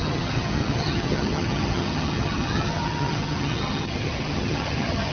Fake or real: fake